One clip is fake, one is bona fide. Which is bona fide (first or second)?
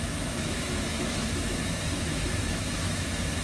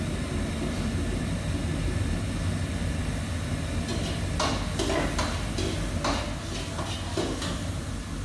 second